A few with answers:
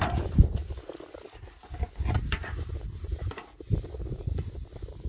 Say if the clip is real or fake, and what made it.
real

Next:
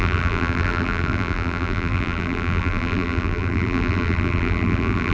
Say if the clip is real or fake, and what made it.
fake, vocoder, BigVGAN v2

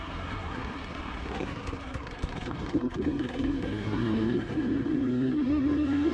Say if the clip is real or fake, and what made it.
fake, codec, SNAC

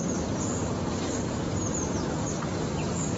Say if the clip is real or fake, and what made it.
fake, vocoder, BigVGAN v2